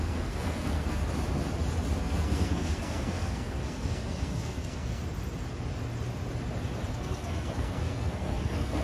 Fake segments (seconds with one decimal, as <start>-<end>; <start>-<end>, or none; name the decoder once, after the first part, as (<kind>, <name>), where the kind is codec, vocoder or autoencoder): 0.0-1.0 (codec, SNAC); 2.0-5.0; 6.9-8.8